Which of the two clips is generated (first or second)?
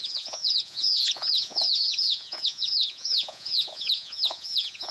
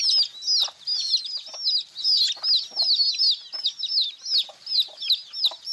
first